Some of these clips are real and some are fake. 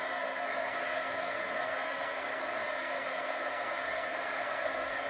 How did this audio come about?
fake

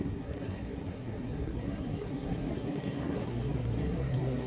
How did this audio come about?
fake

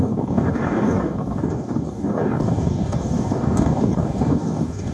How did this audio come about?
fake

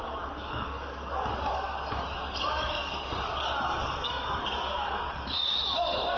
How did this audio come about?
fake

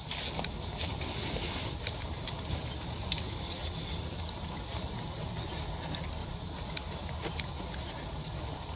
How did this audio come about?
real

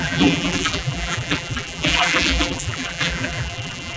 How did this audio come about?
fake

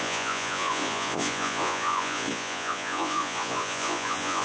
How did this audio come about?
fake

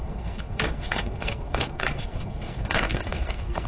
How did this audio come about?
fake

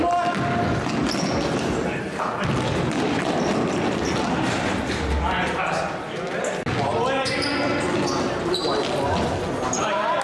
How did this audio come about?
real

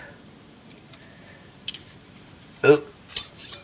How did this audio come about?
fake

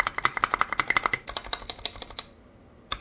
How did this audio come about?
real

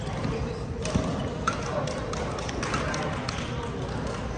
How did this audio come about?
real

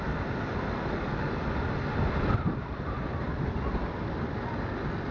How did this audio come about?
real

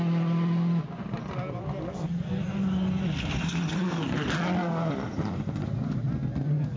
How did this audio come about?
real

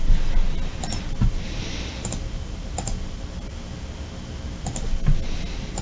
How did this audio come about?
real